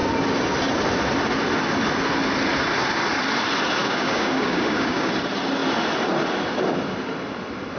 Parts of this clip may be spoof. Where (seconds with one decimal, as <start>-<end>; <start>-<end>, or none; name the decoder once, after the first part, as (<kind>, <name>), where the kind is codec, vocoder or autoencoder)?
3.8-5.1 (codec, DAC)